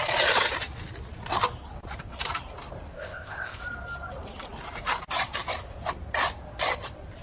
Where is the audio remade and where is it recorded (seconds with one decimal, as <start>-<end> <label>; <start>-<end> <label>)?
0.0-2.9 recorded; 2.9-3.6 remade; 3.6-7.2 recorded